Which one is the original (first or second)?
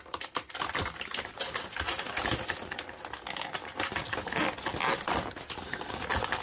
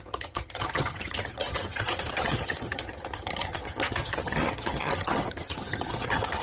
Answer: first